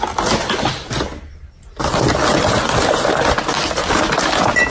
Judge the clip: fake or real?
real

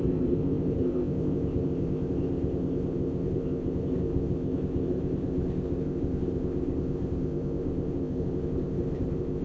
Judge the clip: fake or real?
fake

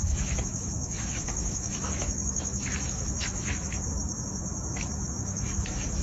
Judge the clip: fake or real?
fake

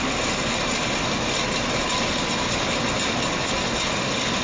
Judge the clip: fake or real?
real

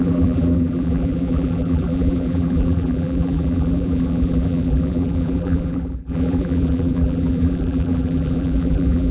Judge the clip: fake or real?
fake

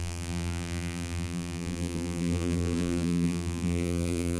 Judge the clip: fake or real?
fake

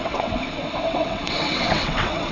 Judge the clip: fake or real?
fake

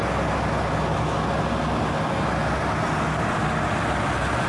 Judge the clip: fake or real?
real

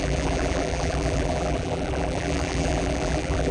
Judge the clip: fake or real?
fake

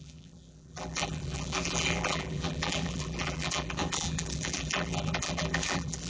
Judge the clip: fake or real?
fake